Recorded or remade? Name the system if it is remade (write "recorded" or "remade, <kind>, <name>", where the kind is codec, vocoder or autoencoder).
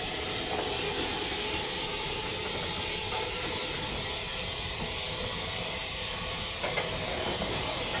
recorded